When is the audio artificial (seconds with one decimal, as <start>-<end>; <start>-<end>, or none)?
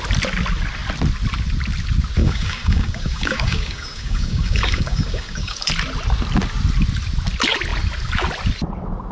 2.2-5.7